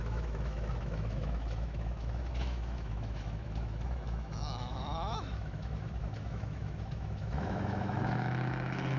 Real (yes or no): no